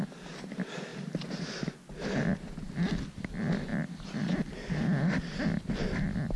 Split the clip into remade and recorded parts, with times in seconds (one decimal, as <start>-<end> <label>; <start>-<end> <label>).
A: 0.0-6.4 recorded